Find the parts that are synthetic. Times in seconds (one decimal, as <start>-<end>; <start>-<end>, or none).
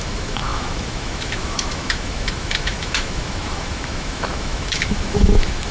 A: 0.0-5.7